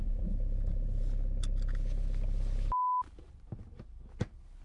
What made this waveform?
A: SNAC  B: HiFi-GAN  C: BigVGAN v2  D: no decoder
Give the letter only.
D